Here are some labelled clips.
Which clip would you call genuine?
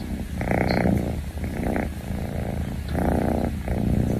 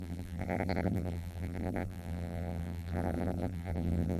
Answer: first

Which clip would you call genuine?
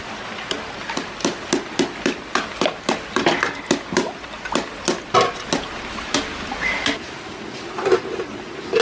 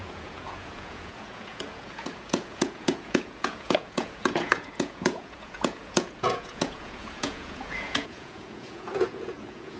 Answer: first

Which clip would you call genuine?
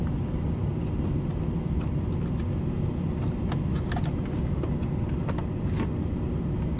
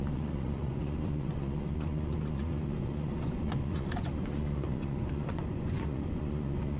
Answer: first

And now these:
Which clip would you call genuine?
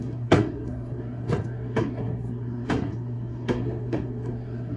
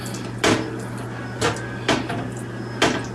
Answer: second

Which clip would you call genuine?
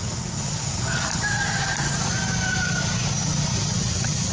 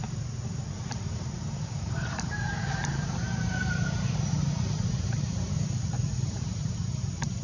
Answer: first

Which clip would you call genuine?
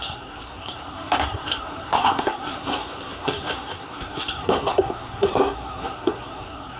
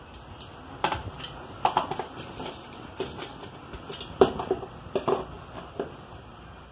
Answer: second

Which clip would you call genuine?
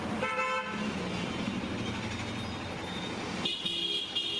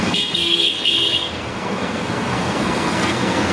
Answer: first